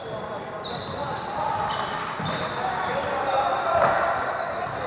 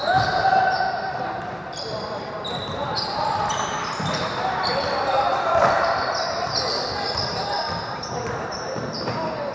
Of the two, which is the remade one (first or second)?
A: second